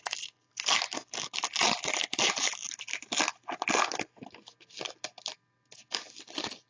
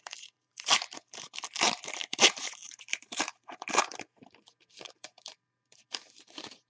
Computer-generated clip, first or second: second